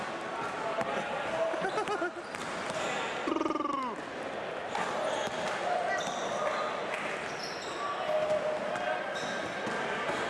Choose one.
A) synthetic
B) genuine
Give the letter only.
B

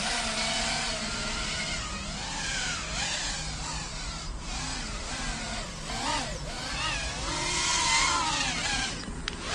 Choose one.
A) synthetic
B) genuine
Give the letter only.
B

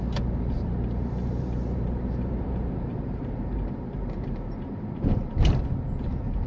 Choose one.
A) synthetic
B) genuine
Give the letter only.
A